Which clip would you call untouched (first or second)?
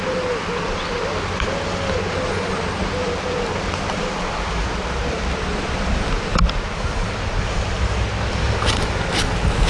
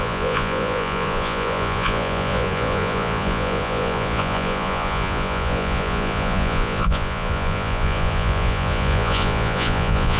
first